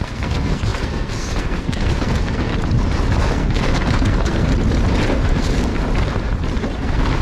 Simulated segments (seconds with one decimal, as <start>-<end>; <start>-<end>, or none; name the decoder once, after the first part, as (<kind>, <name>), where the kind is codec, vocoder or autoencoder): 0.0-2.5 (codec, SNAC); 3.2-4.5; 5.1-5.7; 6.8-7.2